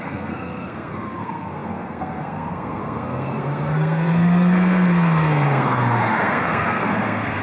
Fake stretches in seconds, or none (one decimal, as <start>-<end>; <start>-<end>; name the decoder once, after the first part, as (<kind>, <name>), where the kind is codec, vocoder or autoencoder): 0.0-7.4 (codec, SNAC)

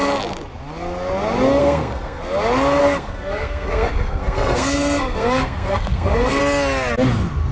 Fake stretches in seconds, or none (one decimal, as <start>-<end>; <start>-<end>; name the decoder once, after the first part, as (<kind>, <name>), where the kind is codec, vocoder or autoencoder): 1.6-2.2 (codec, SNAC); 2.8-6.4

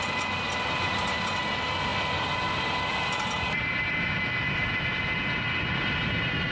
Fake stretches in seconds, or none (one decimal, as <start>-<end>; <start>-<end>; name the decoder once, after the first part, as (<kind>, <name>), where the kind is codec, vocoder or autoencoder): none

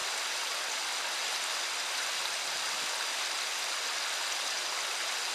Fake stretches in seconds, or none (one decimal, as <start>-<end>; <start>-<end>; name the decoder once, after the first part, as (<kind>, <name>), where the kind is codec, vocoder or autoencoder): none

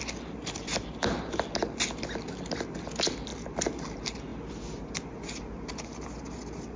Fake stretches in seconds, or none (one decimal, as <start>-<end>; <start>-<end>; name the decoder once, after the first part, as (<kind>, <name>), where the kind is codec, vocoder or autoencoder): none

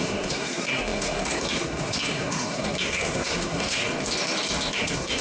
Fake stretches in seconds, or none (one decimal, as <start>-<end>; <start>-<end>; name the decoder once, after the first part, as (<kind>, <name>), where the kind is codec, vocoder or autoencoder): 0.0-3.8 (codec, SNAC); 4.7-5.2